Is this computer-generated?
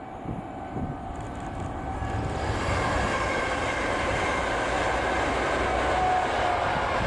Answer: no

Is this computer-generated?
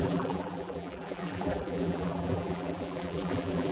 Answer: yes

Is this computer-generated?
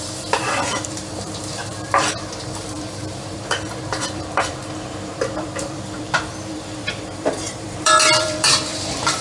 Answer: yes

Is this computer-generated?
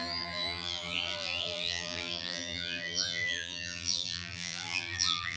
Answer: yes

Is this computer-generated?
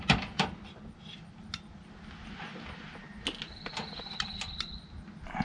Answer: no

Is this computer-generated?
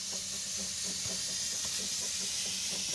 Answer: no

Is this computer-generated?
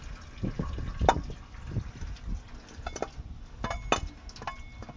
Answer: no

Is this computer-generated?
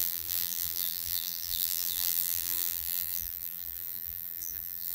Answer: yes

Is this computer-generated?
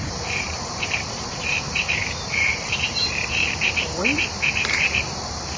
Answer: yes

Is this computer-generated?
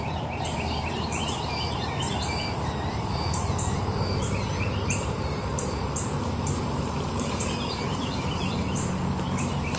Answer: yes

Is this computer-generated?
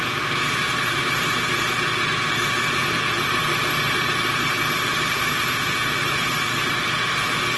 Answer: yes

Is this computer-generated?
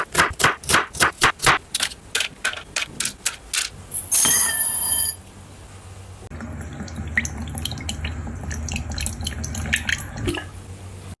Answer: no